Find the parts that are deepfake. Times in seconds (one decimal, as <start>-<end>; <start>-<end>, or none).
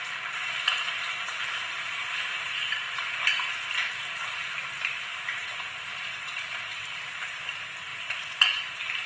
none